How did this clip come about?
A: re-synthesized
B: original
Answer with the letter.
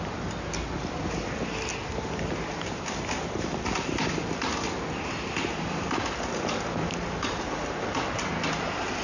B